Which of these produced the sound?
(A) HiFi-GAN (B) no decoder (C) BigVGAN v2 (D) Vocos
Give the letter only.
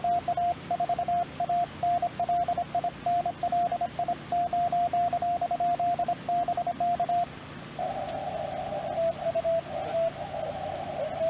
B